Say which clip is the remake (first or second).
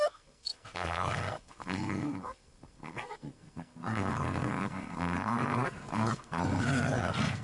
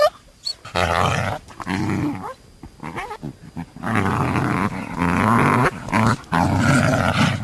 first